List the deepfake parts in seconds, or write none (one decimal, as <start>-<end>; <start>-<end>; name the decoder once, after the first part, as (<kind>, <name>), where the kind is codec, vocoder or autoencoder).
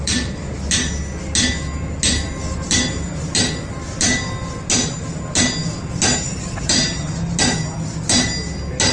6.3-7.1 (vocoder, BigVGAN v2)